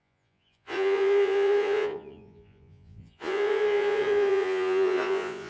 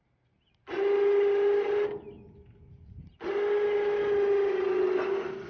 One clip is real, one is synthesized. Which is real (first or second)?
second